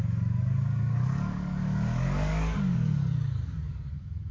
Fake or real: fake